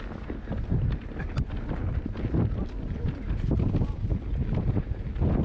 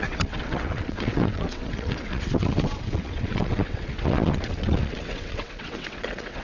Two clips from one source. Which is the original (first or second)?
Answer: first